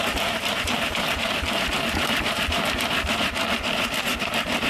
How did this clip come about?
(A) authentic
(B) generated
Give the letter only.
B